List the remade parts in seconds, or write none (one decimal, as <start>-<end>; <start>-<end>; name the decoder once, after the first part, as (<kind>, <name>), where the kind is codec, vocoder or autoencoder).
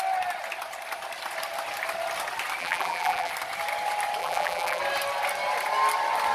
2.6-3.3 (vocoder, BigVGAN v2); 4.2-4.8